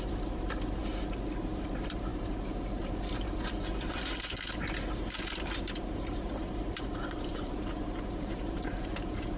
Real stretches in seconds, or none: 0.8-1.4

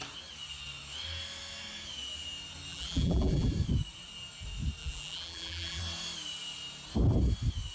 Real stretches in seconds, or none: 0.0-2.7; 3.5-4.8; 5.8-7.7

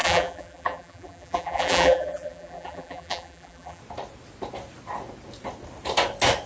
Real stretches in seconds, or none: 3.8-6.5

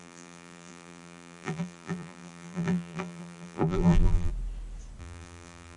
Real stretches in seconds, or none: 4.3-5.0

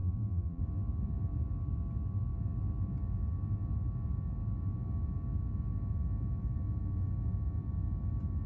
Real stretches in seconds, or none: 0.6-8.5

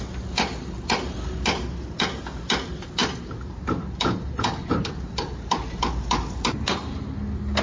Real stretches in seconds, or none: 0.0-3.0; 5.9-7.6